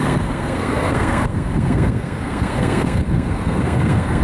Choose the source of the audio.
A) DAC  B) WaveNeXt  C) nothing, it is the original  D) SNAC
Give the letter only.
D